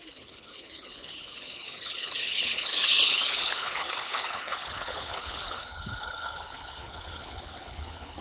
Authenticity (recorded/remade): remade